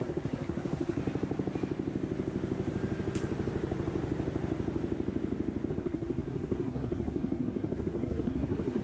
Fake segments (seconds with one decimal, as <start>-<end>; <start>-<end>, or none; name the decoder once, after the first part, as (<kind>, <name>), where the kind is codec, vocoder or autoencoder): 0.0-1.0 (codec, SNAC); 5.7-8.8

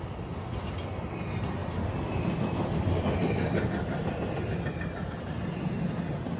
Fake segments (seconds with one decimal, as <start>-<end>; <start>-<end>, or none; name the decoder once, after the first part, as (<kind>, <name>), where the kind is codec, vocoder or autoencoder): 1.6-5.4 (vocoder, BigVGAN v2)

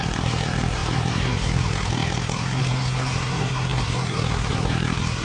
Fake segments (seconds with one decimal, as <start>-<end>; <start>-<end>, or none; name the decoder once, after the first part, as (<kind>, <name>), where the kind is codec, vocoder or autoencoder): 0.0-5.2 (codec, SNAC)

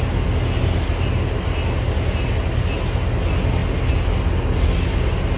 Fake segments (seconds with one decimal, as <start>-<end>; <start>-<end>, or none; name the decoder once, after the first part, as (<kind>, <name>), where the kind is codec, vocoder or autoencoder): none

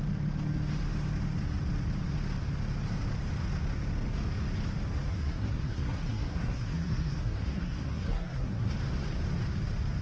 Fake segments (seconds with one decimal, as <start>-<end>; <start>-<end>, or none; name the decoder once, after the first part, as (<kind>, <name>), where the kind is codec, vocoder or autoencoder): 5.1-8.7 (codec, SNAC)

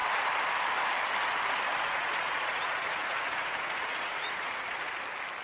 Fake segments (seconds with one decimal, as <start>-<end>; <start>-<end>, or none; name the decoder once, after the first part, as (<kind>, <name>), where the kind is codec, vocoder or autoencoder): 1.7-4.9 (vocoder, Vocos)

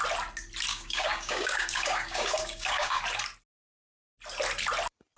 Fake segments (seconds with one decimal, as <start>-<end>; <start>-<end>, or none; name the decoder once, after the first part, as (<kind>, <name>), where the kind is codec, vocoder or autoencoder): 0.7-3.0 (codec, DAC)